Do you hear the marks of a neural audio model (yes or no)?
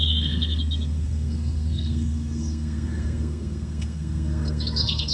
yes